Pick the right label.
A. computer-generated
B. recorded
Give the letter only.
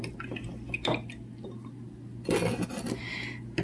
B